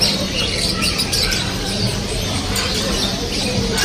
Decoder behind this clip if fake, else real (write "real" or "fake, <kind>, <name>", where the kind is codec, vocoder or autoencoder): fake, vocoder, BigVGAN v2